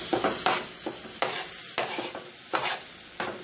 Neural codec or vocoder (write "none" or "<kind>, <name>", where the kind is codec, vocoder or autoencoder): none